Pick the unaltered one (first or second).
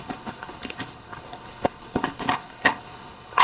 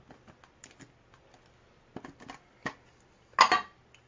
second